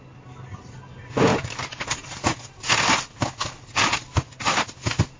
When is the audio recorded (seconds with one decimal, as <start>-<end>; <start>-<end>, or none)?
0.0-1.3; 1.8-5.2